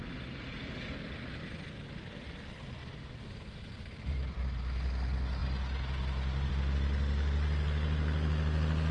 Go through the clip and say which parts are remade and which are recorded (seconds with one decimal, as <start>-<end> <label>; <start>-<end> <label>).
0.0-2.8 recorded; 2.8-4.2 remade; 4.2-8.9 recorded